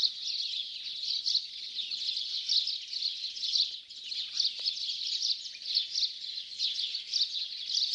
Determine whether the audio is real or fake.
real